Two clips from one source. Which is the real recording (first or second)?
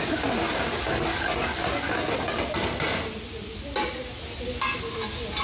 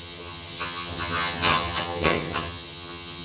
first